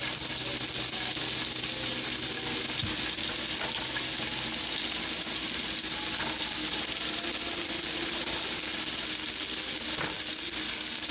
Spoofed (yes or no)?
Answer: no